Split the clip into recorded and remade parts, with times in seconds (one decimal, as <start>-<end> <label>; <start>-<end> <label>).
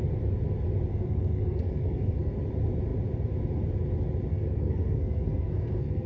0.0-0.9 recorded; 0.9-2.3 remade; 2.3-4.3 recorded; 4.3-6.1 remade